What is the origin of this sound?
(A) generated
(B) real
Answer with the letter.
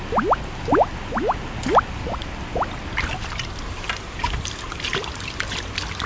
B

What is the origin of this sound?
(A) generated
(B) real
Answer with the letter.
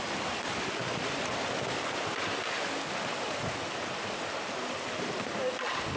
B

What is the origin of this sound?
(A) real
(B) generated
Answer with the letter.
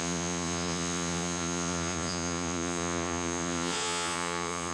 B